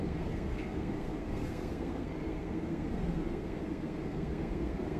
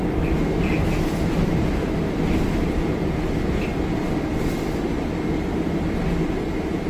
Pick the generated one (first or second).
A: first